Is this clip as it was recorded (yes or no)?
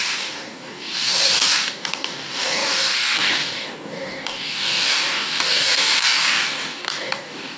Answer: no